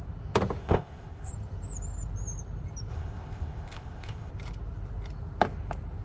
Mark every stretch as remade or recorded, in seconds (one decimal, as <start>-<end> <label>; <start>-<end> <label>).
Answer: 0.0-0.6 recorded; 0.6-1.3 remade; 1.3-2.9 recorded; 2.9-4.3 remade; 4.3-6.0 recorded